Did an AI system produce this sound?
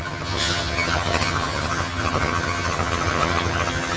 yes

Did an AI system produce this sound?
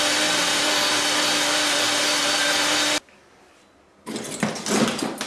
no